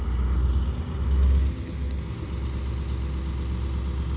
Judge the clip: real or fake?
real